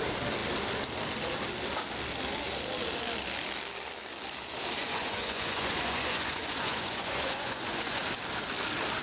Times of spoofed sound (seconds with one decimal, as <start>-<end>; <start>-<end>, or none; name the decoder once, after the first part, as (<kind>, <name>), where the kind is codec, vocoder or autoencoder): 4.8-8.0 (vocoder, Vocos)